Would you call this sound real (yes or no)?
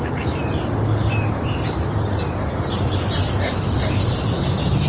yes